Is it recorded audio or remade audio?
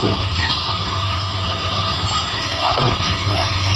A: remade